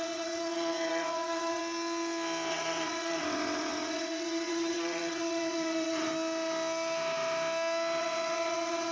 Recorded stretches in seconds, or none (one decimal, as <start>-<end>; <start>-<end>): 1.6-2.5; 6.1-8.0

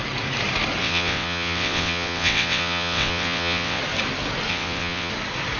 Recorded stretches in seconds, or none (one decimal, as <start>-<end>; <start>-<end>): 0.0-0.8; 3.8-4.5; 5.1-5.6

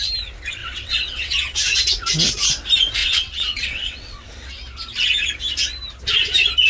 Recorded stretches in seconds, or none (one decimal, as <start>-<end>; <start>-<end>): 0.0-0.6; 1.6-3.0; 4.3-6.7

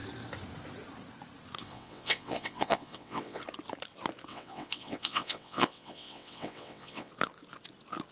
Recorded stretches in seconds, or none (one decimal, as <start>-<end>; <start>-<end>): 0.0-1.6; 3.4-4.3; 7.1-8.1